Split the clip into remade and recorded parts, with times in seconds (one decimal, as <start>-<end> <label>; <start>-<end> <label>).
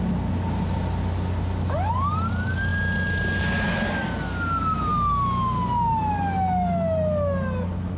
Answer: 0.0-8.0 recorded